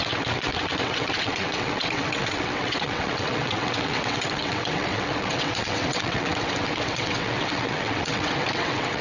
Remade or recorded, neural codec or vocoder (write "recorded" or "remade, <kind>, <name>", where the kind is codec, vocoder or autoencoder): remade, vocoder, WaveNeXt